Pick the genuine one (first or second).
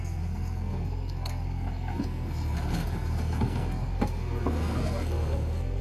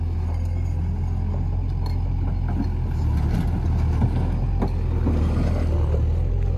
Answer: second